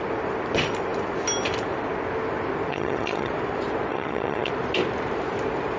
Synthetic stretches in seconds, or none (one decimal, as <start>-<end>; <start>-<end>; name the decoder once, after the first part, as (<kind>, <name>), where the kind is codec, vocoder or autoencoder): 2.7-3.3 (vocoder, HiFi-GAN); 3.9-4.5

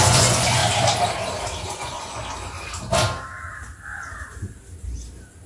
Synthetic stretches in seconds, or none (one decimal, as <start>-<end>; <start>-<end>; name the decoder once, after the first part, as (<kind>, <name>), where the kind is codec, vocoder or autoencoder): 0.0-0.6 (vocoder, Vocos); 1.7-2.2